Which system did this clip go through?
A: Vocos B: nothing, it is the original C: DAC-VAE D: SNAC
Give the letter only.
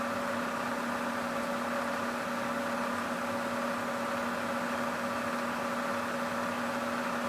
B